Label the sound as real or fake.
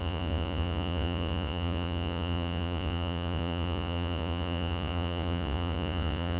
fake